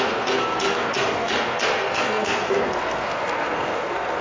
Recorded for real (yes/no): no